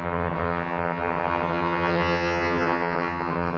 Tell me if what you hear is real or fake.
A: fake